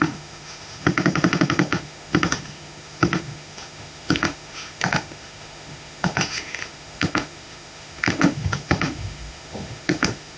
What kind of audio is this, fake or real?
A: fake